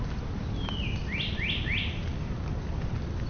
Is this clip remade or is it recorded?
recorded